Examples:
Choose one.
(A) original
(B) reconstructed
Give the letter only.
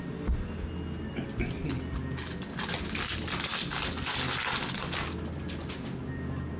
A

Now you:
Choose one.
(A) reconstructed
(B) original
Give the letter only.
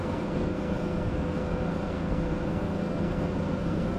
A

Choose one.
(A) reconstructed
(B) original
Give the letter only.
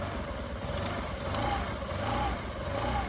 B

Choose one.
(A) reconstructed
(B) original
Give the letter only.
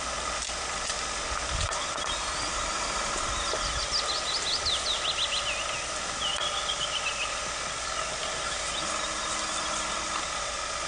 B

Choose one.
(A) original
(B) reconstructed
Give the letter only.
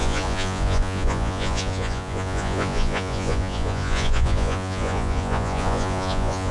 B